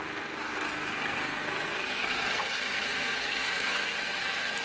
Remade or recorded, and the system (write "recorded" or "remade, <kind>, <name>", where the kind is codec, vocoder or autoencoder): remade, codec, SNAC